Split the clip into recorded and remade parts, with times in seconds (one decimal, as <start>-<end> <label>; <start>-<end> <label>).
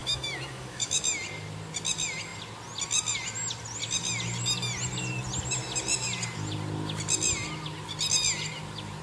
0.0-1.0 remade; 1.0-9.0 recorded